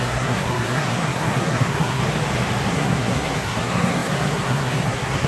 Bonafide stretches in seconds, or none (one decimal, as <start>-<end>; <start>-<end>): 2.0-2.7